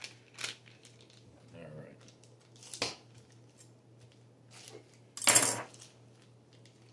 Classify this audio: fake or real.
real